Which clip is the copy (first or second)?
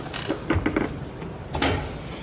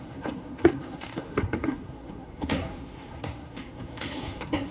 second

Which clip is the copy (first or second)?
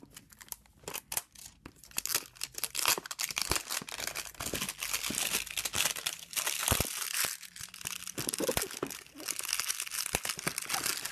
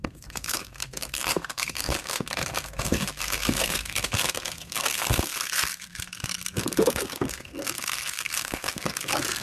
second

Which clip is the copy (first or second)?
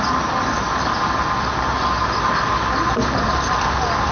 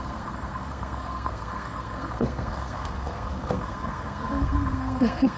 second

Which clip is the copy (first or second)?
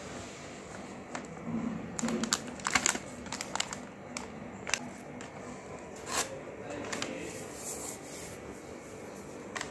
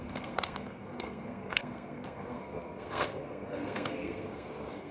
second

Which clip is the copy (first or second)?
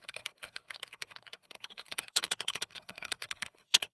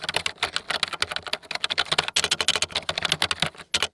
first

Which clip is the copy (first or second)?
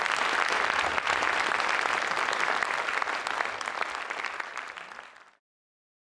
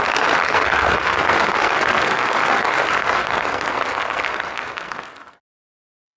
second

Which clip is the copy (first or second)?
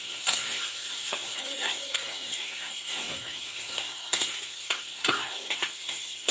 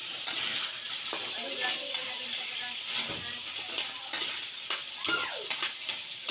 first